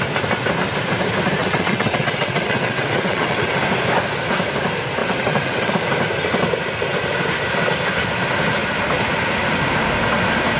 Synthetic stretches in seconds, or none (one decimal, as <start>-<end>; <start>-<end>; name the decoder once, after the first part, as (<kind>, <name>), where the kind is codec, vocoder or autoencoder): 1.4-3.6 (vocoder, WaveNeXt); 5.0-5.7